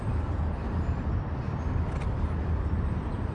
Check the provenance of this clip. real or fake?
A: real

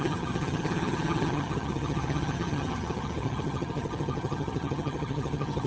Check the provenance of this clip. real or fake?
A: fake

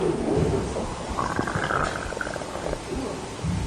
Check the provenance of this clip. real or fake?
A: real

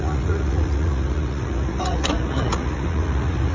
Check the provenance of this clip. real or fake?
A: fake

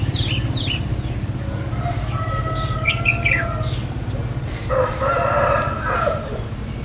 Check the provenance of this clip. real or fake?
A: real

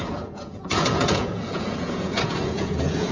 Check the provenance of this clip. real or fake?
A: fake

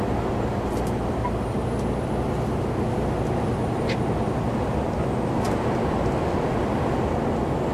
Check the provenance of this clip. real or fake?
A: real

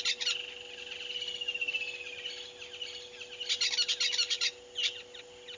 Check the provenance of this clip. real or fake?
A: real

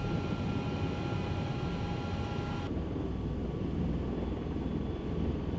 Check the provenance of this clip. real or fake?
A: real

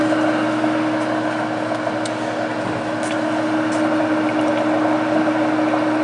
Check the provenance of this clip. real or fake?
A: real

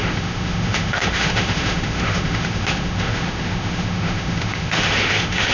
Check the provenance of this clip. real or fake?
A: fake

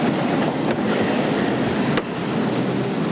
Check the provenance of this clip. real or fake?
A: real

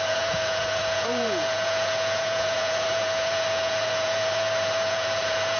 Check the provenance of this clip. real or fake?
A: fake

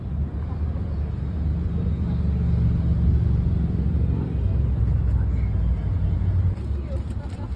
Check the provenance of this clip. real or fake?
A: real